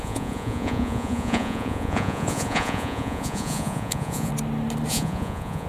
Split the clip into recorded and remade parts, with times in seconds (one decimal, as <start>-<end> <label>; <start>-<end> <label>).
0.0-4.3 remade; 4.3-4.9 recorded; 4.9-5.7 remade